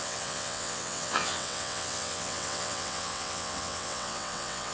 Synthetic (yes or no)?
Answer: yes